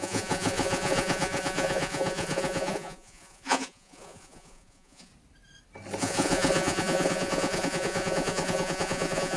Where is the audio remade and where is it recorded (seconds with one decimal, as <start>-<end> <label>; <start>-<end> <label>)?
0.0-5.1 remade; 5.1-6.0 recorded; 6.0-9.4 remade